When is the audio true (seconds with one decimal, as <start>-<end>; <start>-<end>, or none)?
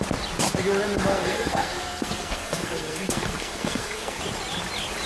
0.0-1.1; 4.2-5.1